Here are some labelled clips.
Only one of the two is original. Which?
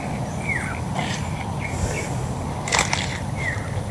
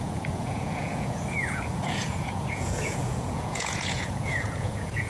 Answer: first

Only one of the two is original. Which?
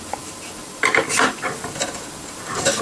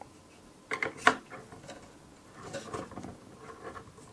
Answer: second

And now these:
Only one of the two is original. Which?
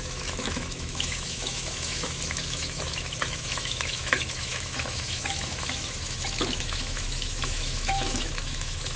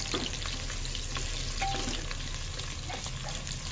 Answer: second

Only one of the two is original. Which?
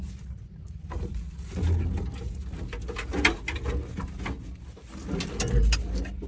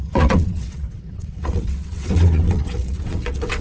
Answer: first